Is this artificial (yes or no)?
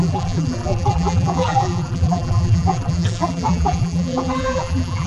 yes